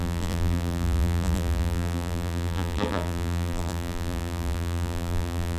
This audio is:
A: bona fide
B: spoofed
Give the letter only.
B